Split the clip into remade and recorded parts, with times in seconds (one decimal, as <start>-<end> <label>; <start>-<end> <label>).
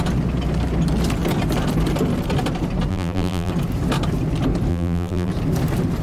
0.0-2.9 recorded; 2.9-3.5 remade; 3.5-4.7 recorded; 4.7-5.3 remade; 5.3-6.0 recorded